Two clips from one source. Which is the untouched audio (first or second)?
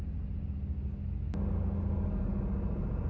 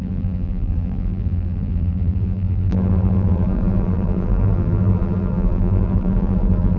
first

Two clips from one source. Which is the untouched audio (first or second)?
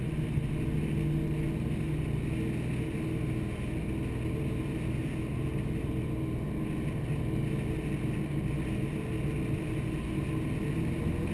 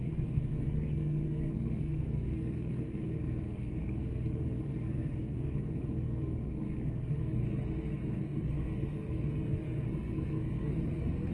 first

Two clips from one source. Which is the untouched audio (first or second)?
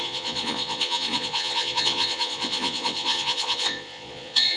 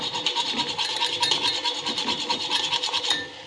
second